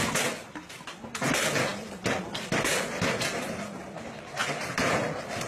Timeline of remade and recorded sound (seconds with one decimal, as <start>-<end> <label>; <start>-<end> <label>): 0.0-5.5 recorded